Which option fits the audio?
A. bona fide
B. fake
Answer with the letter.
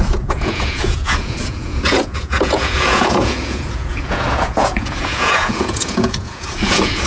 B